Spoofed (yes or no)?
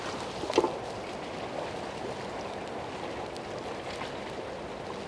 no